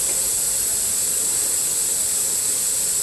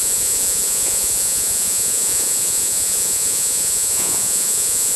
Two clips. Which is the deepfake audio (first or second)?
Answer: second